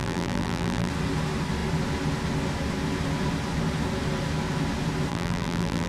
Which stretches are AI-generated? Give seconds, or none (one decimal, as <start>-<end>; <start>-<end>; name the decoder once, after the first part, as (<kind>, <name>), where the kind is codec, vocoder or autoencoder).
0.0-0.9 (vocoder, BigVGAN v2); 5.1-5.9